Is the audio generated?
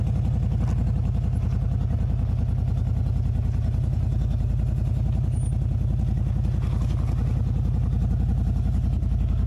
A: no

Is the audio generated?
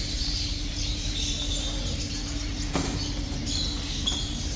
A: yes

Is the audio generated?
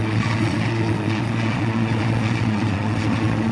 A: yes